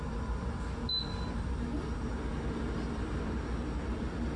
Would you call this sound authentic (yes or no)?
yes